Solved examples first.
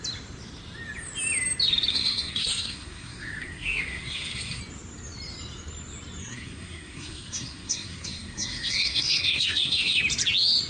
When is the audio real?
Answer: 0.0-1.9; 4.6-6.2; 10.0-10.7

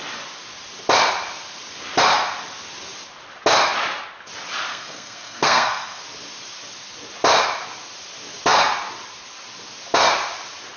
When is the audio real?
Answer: 0.0-4.7; 6.0-10.8